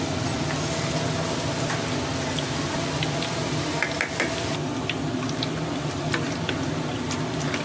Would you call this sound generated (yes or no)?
no